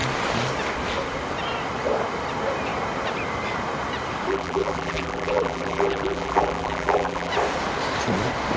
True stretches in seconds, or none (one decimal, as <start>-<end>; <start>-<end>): 0.0-4.3; 7.3-8.6